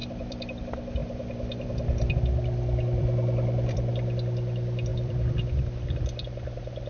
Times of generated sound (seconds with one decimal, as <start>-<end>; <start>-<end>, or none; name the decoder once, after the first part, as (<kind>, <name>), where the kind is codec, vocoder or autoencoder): 0.0-0.6 (vocoder, BigVGAN v2); 1.0-2.1; 3.0-3.9; 4.9-5.4